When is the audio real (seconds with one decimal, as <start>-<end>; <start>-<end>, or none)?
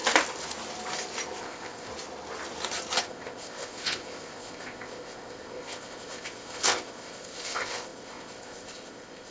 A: 0.0-1.4; 1.9-3.0